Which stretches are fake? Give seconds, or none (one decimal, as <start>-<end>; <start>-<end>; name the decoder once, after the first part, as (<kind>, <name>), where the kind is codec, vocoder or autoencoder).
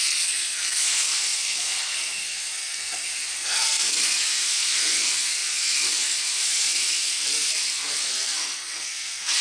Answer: 0.0-9.4 (codec, SNAC)